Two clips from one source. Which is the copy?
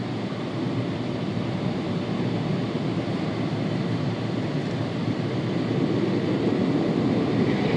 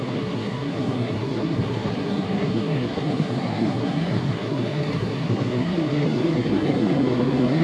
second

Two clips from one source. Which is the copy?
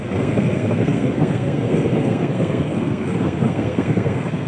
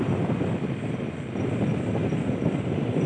first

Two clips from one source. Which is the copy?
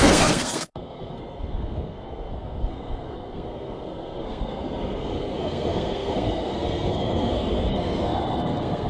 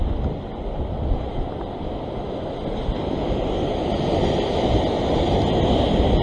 first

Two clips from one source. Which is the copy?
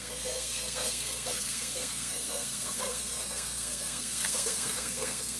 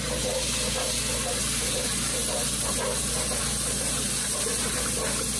first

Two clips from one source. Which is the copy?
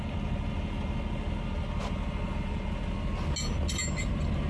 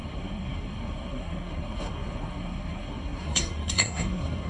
second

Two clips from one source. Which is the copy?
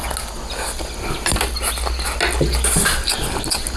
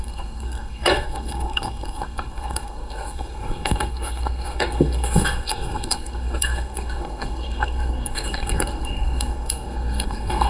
second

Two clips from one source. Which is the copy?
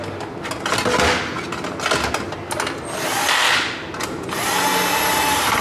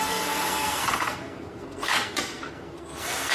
second